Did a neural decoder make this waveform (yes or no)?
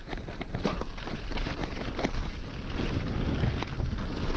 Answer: no